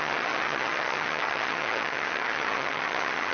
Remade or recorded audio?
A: remade